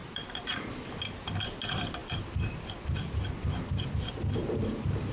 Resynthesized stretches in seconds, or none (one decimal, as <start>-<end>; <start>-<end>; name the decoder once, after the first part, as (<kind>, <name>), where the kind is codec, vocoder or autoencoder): 0.0-0.7 (vocoder, BigVGAN v2)